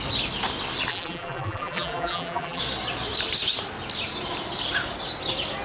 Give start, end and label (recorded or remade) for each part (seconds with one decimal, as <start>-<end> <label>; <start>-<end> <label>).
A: 0.0-0.9 recorded; 0.9-2.6 remade; 2.6-5.6 recorded